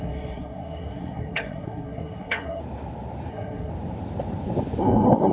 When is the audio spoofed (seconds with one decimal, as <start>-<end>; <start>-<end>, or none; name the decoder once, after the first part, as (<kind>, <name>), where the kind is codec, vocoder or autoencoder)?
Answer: 0.0-2.6 (codec, SNAC); 3.3-3.7; 4.8-5.3